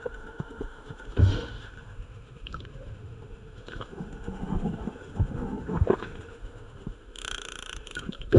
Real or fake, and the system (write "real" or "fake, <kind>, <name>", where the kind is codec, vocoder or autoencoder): fake, autoencoder, DAC-VAE